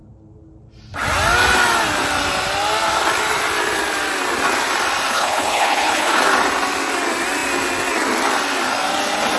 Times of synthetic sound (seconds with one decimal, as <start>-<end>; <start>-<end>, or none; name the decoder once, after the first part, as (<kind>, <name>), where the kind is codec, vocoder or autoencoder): 5.1-6.2 (codec, HILCodec)